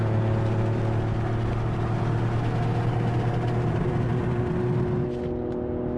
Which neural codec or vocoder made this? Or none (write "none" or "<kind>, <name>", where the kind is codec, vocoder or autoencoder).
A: none